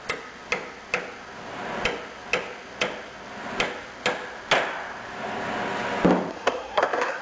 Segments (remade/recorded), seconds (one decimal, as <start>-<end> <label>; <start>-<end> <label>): 0.0-6.3 recorded; 6.3-7.2 remade